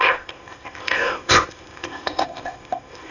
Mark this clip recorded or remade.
remade